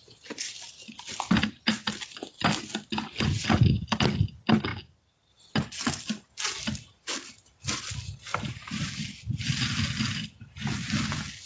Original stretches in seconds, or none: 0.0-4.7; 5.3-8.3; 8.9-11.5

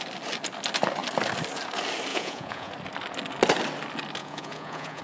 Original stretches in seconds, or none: 0.0-2.1; 2.7-4.2

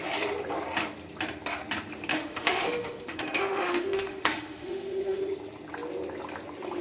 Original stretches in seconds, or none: 0.0-2.1; 5.2-6.8

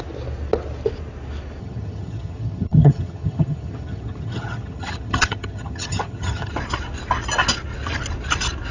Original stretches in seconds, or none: 0.0-1.6; 6.5-8.7